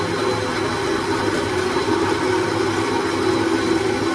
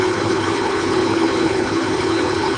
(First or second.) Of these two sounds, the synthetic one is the second